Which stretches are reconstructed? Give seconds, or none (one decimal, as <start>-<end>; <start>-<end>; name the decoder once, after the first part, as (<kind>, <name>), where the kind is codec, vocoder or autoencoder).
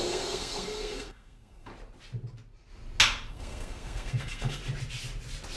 0.0-1.7 (codec, SNAC); 3.3-4.6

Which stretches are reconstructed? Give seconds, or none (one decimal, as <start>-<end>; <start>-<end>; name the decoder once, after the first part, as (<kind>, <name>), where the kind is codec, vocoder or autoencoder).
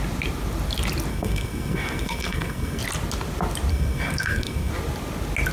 1.1-2.8 (codec, SNAC); 3.7-4.7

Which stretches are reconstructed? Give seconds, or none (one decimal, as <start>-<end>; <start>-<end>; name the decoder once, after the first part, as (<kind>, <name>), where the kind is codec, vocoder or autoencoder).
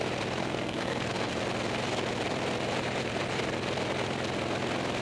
0.4-1.3 (codec, SNAC)